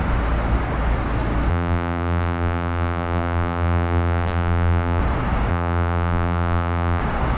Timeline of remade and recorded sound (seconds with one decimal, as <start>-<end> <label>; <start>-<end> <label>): 0.0-1.5 recorded; 1.5-5.0 remade; 5.0-5.5 recorded; 5.5-7.0 remade; 7.0-7.4 recorded